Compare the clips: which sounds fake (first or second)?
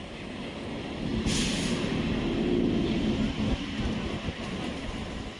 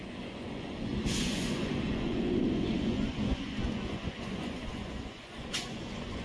second